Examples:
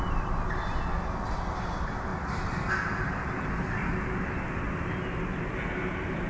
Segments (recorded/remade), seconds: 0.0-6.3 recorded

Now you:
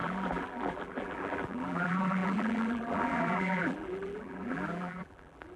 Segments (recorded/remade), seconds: 0.0-5.6 remade